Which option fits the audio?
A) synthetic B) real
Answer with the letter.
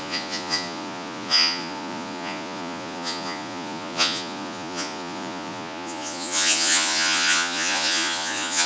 A